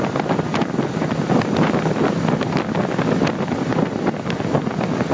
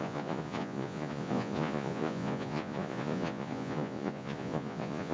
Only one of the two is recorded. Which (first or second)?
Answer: first